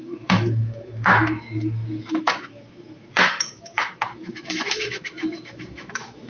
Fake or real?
fake